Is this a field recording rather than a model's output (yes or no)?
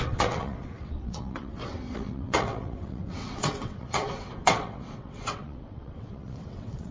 no